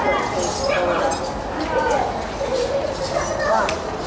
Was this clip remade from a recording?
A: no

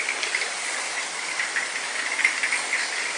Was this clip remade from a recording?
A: no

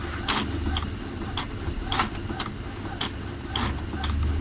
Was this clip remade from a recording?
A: no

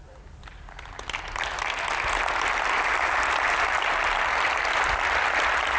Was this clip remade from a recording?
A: no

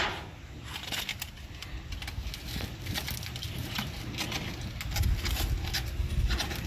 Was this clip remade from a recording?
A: no